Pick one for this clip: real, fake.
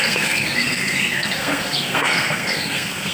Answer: fake